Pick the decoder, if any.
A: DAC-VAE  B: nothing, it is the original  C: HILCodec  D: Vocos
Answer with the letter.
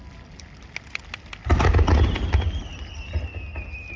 B